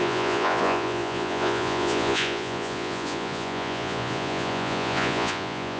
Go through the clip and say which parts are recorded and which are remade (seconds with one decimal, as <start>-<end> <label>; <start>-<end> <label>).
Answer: 0.0-5.8 remade